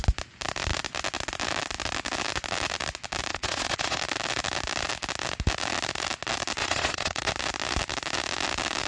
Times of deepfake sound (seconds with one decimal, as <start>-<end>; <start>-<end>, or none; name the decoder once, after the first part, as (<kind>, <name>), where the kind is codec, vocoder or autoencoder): 3.3-4.0 (vocoder, Vocos); 6.6-7.3